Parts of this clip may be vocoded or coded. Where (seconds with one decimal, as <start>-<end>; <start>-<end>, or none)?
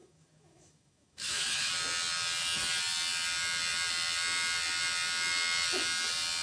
0.0-1.7